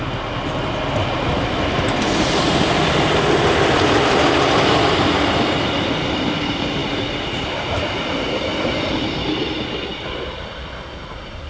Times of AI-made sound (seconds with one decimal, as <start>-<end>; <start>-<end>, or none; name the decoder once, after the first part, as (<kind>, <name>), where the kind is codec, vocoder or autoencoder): 6.8-7.9 (vocoder, BigVGAN v2)